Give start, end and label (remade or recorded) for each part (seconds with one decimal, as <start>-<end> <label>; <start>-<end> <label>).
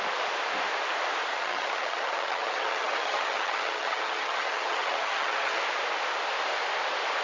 0.0-1.3 recorded; 1.3-5.6 remade; 5.6-7.2 recorded